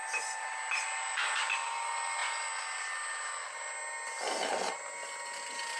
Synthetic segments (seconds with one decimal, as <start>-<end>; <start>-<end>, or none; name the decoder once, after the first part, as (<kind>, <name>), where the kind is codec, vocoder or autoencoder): none